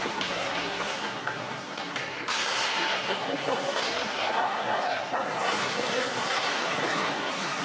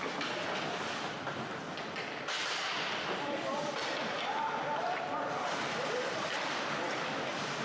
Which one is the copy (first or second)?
first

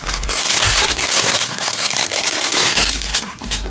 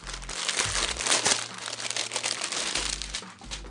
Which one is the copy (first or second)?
first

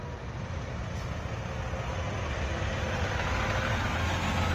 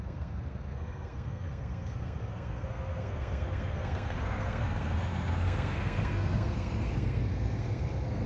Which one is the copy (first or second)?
second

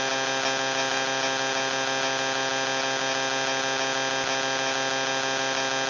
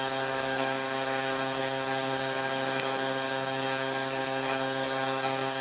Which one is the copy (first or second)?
second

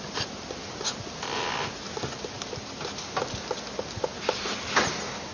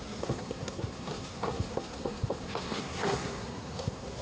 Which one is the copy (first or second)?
second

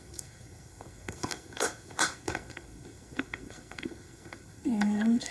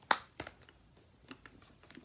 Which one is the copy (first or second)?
first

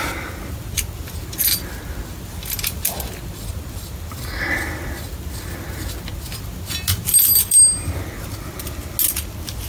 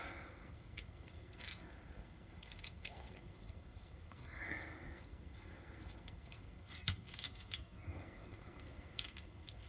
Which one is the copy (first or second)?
second